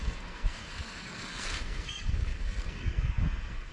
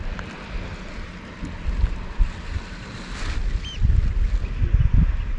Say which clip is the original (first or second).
second